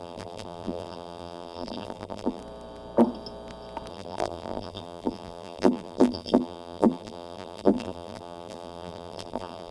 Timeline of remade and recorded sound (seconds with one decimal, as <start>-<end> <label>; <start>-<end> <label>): 0.0-2.4 remade; 2.4-3.9 recorded; 3.9-9.7 remade